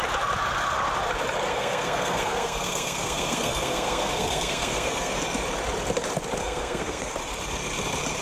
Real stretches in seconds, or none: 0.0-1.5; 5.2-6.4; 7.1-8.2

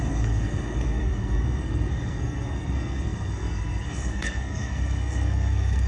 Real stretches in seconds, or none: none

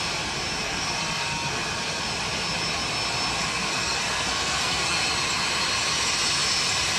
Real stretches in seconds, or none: 0.0-0.6; 2.0-3.4; 5.0-7.0

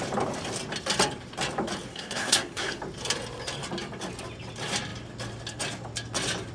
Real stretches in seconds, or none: 0.0-1.9; 2.8-6.5